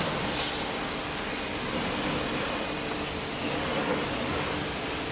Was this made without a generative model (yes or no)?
yes